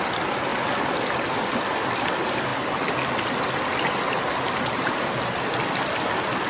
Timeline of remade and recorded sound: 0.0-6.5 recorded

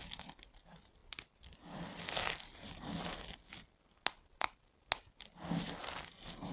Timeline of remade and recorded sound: 0.0-6.5 recorded

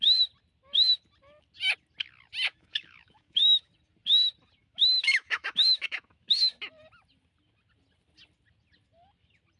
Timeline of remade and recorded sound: 0.0-2.5 recorded; 2.5-3.7 remade; 3.7-4.6 recorded; 4.6-6.5 remade; 6.5-9.6 recorded

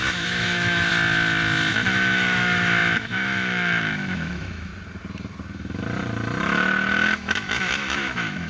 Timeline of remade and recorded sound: 0.0-0.9 remade; 0.9-1.7 recorded; 1.7-4.7 remade; 4.7-6.4 recorded; 6.4-8.5 remade

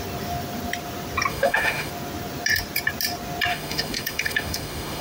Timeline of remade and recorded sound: 0.0-1.3 recorded; 1.3-1.9 remade; 1.9-3.5 recorded; 3.5-5.0 remade

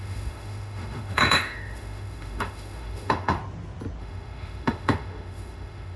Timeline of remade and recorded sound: 0.0-3.4 remade; 3.4-4.0 recorded; 4.0-6.0 remade

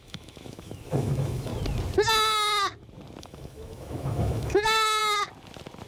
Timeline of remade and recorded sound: 0.0-1.5 remade; 1.5-3.2 recorded; 3.2-5.0 remade; 5.0-5.9 recorded